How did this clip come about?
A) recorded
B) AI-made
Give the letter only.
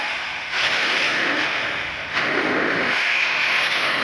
B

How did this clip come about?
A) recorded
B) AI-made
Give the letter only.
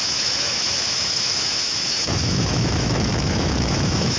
B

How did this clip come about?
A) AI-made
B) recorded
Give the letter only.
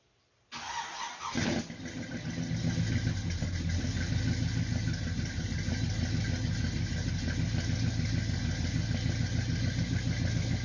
B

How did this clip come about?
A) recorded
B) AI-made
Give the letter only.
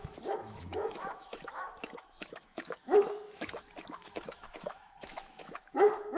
B